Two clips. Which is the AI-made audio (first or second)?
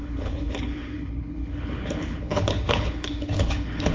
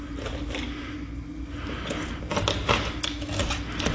first